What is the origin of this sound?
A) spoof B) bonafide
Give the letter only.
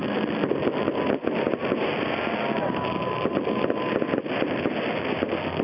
B